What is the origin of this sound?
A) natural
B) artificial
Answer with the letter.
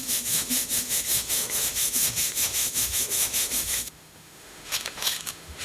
B